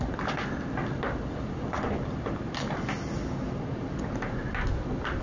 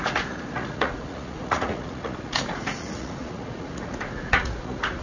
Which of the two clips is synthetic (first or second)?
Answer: second